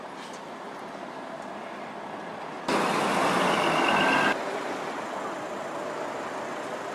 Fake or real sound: real